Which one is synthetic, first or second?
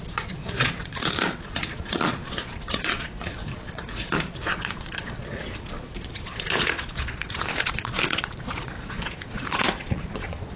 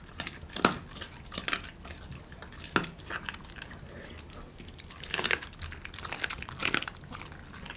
first